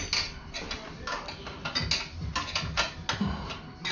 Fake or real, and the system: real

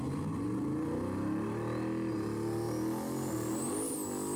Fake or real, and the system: real